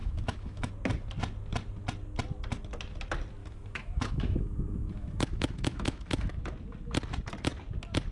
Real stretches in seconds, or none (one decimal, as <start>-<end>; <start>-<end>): 0.7-3.4; 6.4-8.1